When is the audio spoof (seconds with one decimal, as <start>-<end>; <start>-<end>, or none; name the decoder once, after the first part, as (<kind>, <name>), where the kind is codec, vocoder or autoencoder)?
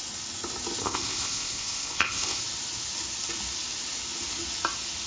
0.8-2.4 (codec, ZipCodec)